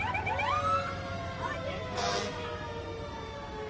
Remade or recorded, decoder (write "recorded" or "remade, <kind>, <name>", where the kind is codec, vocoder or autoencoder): recorded